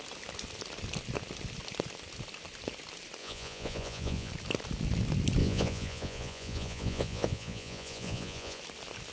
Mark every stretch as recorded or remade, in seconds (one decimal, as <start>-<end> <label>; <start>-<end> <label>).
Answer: 0.0-3.2 recorded; 3.2-4.3 remade; 4.3-5.4 recorded; 5.4-8.6 remade; 8.6-9.1 recorded